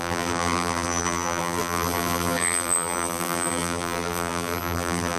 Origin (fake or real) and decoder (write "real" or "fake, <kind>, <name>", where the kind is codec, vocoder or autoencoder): fake, vocoder, BigVGAN v2